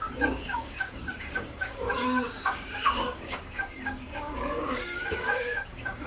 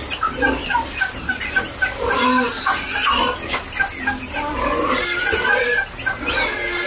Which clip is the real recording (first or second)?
second